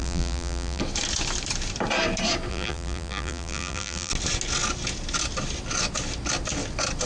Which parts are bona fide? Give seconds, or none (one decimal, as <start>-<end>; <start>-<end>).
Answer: 0.8-2.5; 4.1-7.1